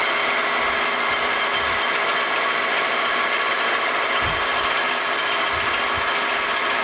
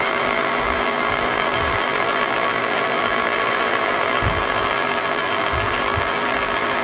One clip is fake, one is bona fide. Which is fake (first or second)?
second